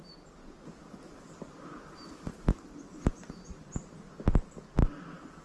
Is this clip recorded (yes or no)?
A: yes